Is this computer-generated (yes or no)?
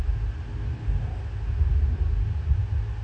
no